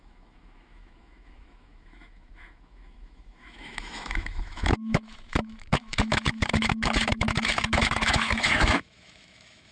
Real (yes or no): no